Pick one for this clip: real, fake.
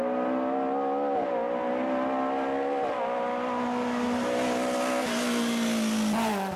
real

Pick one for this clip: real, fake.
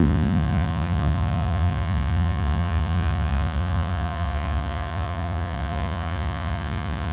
fake